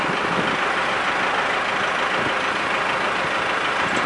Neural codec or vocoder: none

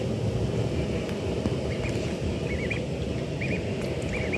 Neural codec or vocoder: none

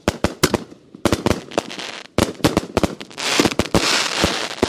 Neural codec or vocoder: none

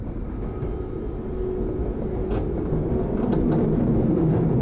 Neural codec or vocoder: none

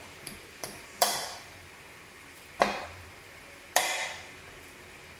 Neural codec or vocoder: vocoder, BigVGAN v2